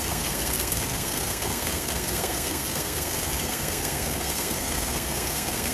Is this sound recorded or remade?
remade